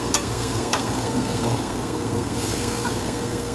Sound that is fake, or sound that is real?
fake